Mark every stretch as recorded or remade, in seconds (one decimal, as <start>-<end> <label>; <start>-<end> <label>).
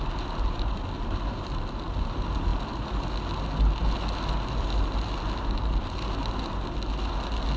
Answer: 0.0-7.6 recorded